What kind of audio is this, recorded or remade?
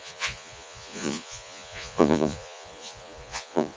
remade